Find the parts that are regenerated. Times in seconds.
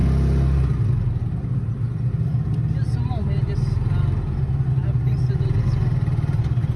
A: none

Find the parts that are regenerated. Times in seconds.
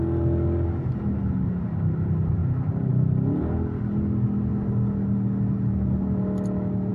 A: none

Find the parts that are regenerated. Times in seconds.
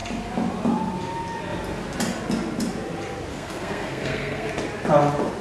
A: 3.3-4.5 (codec, SNAC)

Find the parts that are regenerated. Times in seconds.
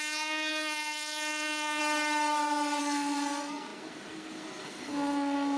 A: 0.0-1.8 (codec, SNAC); 2.8-5.6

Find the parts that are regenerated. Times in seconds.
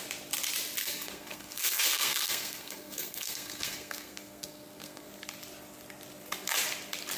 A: 0.8-5.1 (codec, SNAC)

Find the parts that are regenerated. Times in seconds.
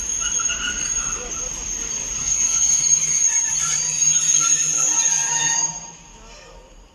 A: 2.2-2.8 (codec, SNAC)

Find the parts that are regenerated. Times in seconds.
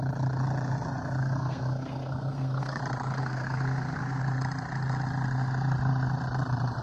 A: 1.2-2.8 (codec, SNAC); 3.2-4.2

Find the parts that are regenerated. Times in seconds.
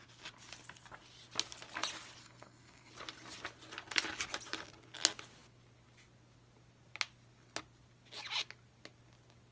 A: 2.2-2.9 (codec, SNAC)